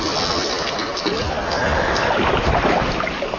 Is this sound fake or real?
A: real